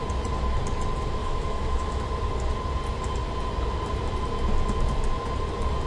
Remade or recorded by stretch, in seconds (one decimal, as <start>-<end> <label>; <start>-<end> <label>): 0.0-1.2 recorded; 1.2-2.0 remade; 2.0-5.9 recorded